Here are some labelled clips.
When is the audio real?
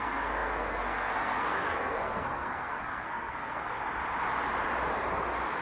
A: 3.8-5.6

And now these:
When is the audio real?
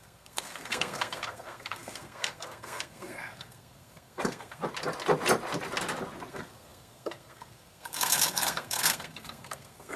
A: 4.6-6.3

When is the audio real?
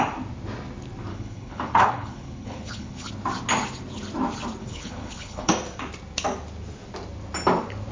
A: 0.0-1.1; 3.1-4.6; 5.5-7.9